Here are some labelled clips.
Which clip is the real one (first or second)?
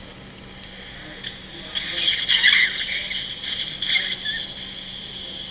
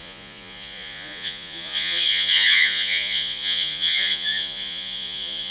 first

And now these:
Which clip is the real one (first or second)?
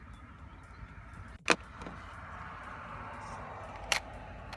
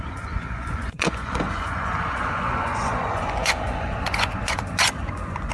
first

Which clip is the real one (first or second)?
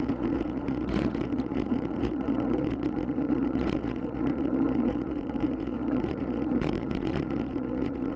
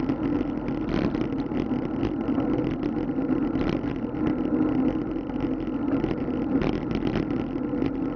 second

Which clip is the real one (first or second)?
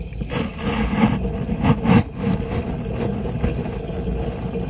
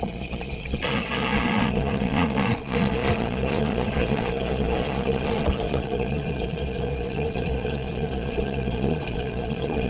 first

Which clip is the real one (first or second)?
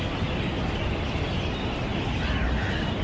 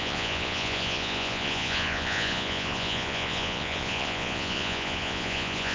first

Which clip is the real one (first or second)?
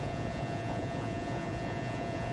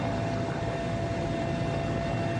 second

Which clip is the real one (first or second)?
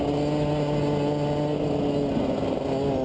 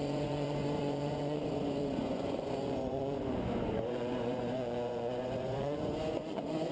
first